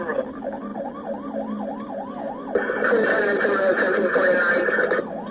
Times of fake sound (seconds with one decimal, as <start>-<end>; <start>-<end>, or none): none